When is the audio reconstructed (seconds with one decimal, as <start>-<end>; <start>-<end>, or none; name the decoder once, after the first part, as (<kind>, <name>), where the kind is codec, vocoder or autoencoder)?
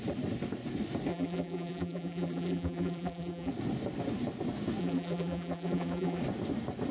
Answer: 1.1-3.5 (vocoder, BigVGAN v2); 4.8-6.2